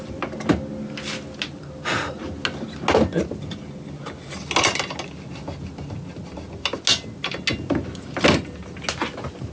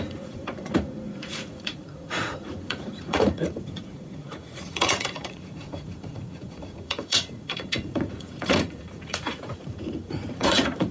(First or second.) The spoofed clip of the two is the second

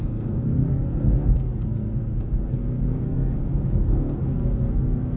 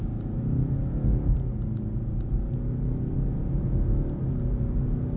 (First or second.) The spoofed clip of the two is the first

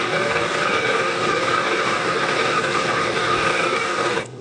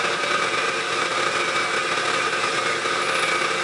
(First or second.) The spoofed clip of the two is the first